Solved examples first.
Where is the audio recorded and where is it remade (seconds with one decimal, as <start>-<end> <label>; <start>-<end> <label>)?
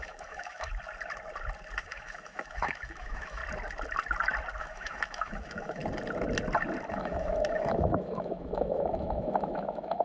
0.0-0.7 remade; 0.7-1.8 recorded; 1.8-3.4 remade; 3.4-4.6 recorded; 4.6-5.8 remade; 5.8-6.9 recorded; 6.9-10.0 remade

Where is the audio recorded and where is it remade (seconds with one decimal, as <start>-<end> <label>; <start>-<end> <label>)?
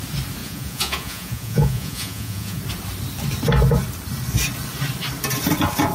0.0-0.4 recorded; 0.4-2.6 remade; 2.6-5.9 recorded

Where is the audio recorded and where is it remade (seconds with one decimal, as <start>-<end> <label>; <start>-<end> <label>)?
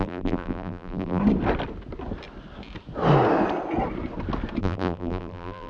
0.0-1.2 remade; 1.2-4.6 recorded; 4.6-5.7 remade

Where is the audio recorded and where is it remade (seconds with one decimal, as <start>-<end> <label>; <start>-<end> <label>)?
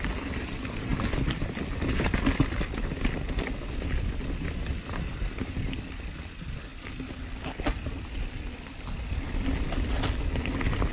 0.0-10.9 recorded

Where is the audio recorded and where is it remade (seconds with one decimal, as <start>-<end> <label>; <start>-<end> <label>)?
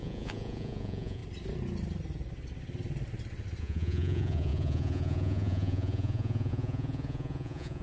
0.0-1.2 remade; 1.2-3.6 recorded; 3.6-7.8 remade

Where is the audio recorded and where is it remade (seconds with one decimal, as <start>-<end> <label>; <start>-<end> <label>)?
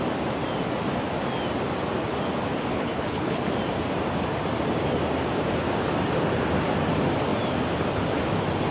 0.0-2.7 recorded; 2.7-3.5 remade; 3.5-8.7 recorded